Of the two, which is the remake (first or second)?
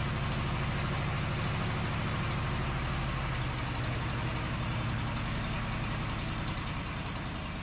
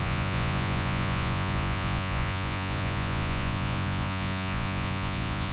second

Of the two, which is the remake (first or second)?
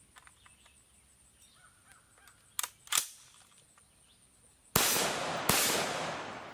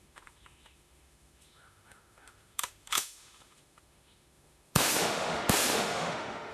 second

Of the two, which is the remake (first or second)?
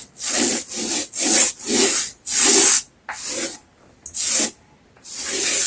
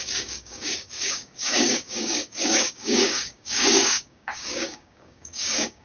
second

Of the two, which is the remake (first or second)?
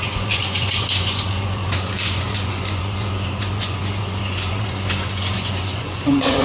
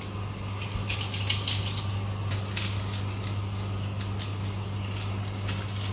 first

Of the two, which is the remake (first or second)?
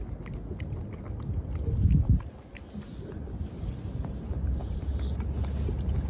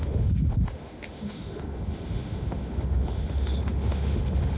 second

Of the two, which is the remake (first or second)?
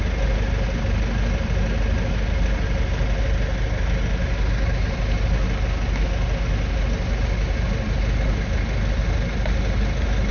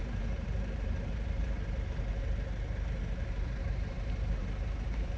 second